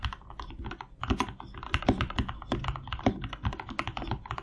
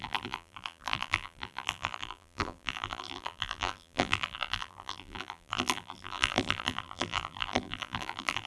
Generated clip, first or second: second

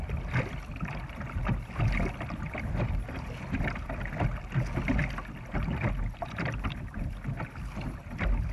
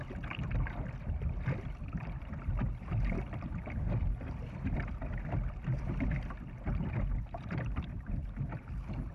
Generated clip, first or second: second